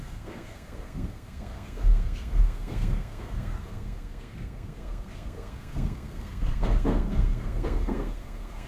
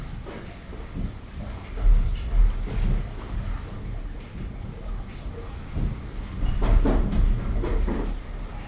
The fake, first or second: first